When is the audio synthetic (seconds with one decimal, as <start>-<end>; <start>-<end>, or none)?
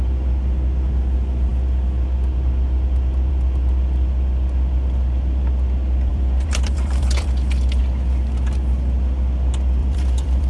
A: 6.1-7.8; 9.8-10.5